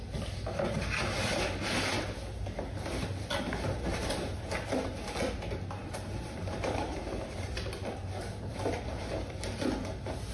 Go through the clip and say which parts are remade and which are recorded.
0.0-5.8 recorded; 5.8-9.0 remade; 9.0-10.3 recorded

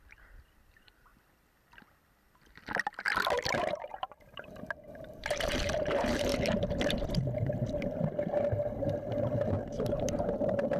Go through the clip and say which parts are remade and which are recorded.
0.0-1.1 remade; 1.1-3.5 recorded; 3.5-6.3 remade; 6.3-9.4 recorded; 9.4-10.8 remade

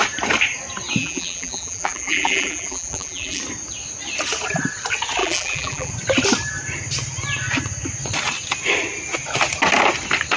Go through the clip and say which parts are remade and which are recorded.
0.0-1.0 recorded; 1.0-3.4 remade; 3.4-5.2 recorded; 5.2-5.9 remade; 5.9-10.4 recorded

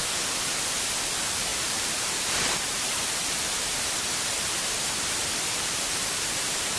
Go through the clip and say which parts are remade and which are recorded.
0.0-1.0 recorded; 1.0-3.7 remade; 3.7-4.3 recorded; 4.3-6.8 remade

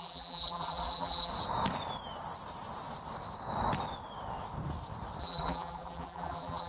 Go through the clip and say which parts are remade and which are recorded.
0.0-1.3 remade; 1.3-5.2 recorded; 5.2-6.7 remade

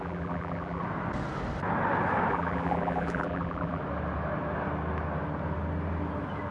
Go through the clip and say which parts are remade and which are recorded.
0.0-0.8 remade; 0.8-2.3 recorded; 2.3-3.8 remade; 3.8-6.5 recorded